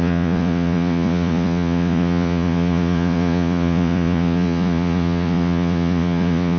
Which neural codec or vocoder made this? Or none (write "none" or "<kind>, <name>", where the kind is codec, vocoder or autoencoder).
vocoder, Vocos